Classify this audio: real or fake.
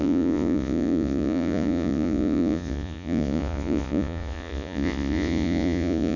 fake